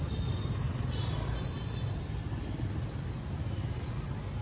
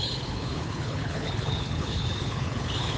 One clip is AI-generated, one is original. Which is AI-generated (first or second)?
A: second